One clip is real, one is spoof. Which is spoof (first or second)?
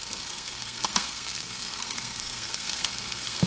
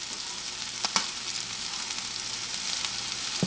first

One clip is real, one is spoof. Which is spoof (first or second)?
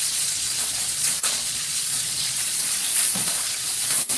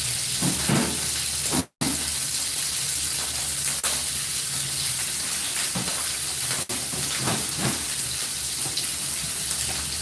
first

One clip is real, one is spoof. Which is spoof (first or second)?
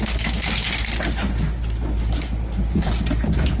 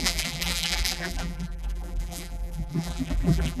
second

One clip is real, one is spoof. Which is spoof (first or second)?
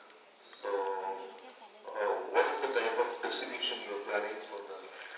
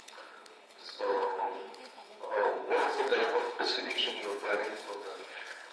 second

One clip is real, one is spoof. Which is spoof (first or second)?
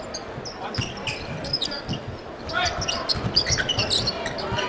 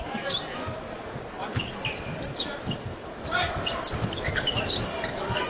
second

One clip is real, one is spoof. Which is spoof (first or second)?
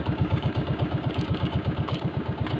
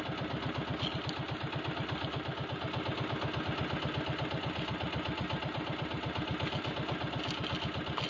first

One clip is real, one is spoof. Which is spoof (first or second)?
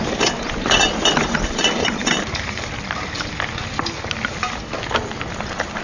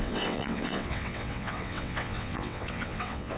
second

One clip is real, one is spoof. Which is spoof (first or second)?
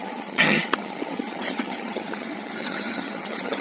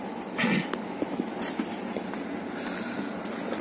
first